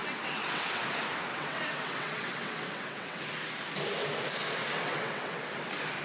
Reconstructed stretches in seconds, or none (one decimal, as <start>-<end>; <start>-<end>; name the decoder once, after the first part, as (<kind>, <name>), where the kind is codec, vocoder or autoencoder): 0.0-0.8 (vocoder, WaveNeXt); 1.3-3.2; 4.6-5.4